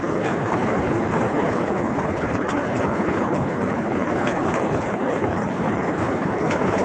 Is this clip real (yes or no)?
no